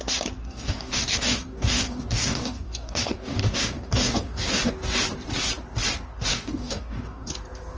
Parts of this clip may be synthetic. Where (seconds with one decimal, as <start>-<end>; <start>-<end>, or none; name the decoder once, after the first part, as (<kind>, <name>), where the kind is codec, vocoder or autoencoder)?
0.4-4.7 (codec, DAC); 6.3-7.3